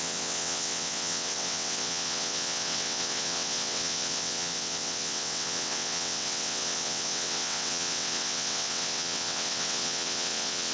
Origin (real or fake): fake